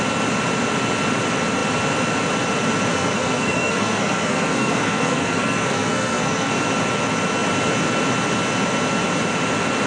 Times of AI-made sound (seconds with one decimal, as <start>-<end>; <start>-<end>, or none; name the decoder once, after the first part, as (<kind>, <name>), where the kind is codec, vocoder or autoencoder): 2.9-6.5 (codec, SNAC)